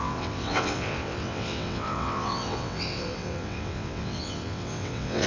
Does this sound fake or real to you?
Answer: fake